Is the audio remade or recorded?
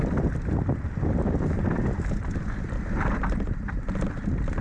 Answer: recorded